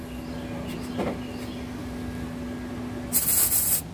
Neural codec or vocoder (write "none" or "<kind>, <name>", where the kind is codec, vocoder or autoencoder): none